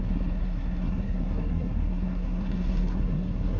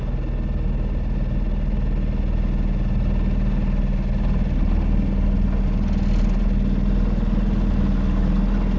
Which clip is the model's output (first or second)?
first